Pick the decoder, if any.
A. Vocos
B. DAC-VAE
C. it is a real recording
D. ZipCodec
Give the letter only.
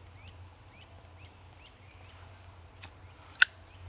C